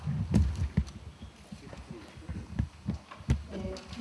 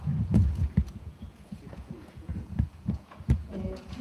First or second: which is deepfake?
second